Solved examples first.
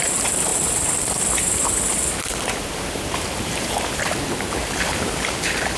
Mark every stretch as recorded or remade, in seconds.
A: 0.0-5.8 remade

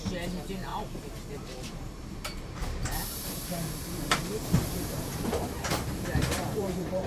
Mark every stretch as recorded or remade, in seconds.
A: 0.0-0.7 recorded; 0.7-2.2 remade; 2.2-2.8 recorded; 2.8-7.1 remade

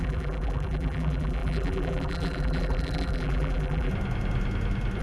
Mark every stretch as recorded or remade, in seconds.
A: 0.0-3.9 remade; 3.9-5.0 recorded

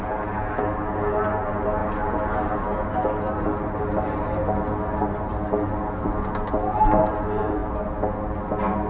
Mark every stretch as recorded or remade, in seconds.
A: 0.0-8.9 recorded